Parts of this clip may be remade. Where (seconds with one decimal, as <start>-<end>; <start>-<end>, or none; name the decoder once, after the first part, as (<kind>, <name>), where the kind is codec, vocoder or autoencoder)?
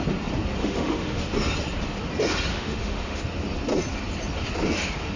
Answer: 0.6-1.2 (autoencoder, DAC-VAE); 2.5-3.2